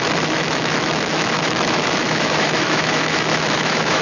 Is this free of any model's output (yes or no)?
no